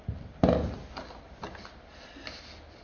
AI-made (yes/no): no